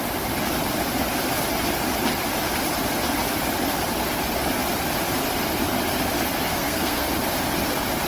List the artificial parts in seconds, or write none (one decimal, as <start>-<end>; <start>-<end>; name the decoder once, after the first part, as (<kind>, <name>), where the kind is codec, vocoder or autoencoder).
6.5-7.1 (codec, SNAC)

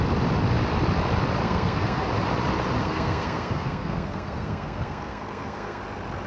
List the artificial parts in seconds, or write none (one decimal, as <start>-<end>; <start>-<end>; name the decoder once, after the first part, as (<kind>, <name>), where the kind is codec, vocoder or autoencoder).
1.4-2.1 (codec, SNAC); 2.8-5.8

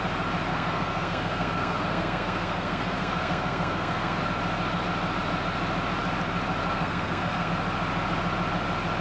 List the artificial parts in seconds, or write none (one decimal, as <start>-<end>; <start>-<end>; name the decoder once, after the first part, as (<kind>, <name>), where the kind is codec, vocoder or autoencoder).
0.5-4.2 (codec, SNAC); 6.6-7.5